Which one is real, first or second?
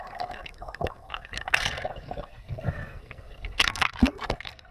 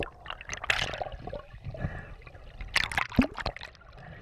second